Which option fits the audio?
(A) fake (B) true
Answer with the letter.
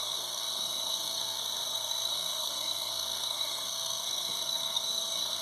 A